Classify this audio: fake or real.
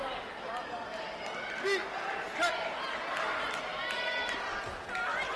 real